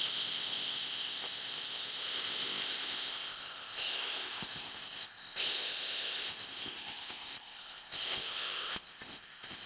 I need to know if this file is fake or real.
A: fake